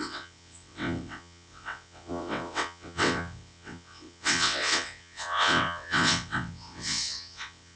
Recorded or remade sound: remade